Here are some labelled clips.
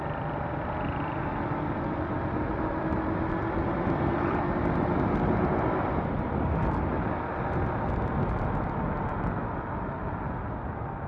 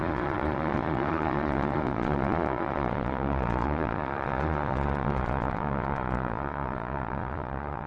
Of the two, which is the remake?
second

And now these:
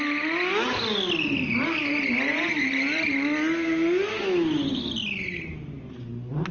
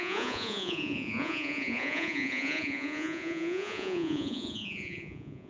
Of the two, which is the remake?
second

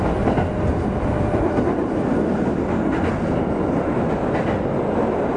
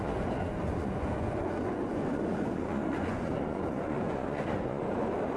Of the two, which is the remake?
second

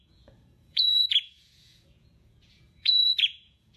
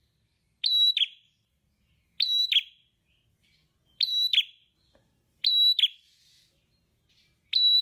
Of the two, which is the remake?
first